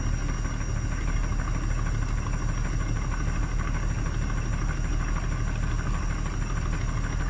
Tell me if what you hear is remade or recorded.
recorded